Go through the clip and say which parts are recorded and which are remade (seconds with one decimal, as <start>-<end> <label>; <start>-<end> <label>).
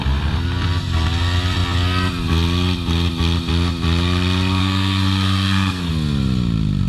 0.0-4.6 recorded; 4.6-5.9 remade; 5.9-6.9 recorded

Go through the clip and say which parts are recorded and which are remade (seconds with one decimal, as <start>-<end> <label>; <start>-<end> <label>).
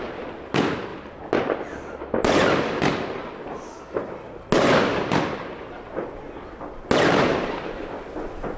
0.0-8.6 recorded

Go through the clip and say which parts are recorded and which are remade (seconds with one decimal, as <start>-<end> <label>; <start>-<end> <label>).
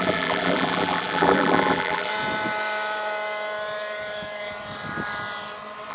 0.0-2.1 remade; 2.1-5.9 recorded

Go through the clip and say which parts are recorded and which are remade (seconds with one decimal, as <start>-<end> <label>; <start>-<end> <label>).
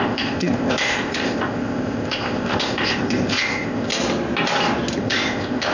0.0-3.9 remade; 3.9-5.0 recorded; 5.0-5.7 remade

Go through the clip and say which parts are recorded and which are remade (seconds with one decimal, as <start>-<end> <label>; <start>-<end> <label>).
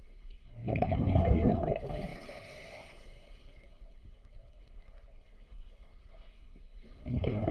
0.0-7.5 remade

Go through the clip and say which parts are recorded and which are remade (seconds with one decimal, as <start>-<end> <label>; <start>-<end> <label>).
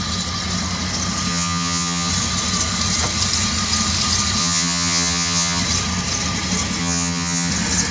0.0-1.3 recorded; 1.3-2.1 remade; 2.1-4.4 recorded; 4.4-5.6 remade; 5.6-6.8 recorded; 6.8-7.5 remade; 7.5-7.9 recorded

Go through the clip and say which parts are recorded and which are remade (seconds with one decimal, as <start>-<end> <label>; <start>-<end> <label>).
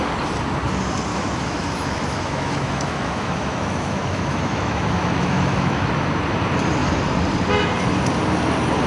0.0-1.1 recorded; 1.1-5.9 remade; 5.9-8.9 recorded